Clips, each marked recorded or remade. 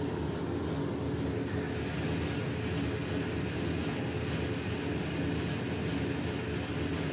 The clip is recorded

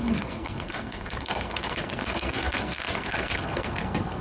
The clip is remade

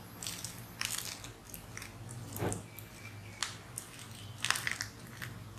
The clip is recorded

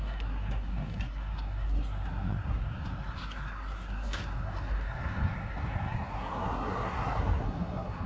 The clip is remade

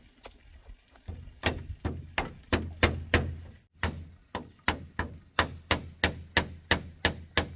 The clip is recorded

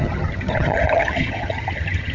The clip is remade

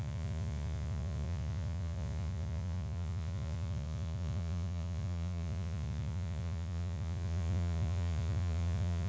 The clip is remade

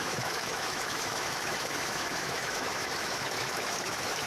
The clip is remade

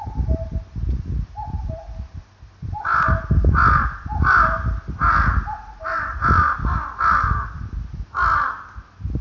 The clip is recorded